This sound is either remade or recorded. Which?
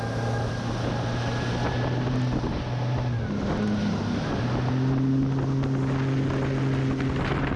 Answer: recorded